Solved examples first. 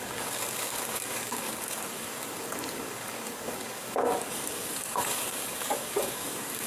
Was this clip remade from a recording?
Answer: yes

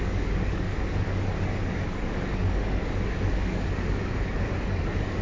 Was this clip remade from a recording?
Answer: yes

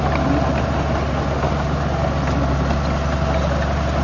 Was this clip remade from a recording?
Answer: no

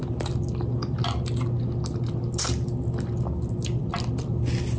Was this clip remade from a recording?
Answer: no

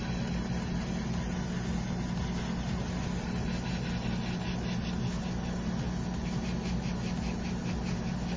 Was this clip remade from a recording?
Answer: no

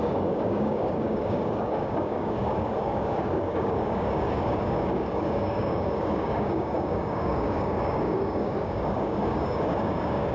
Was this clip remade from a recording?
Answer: yes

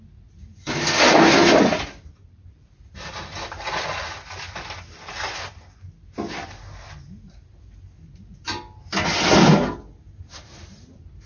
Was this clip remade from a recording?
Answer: no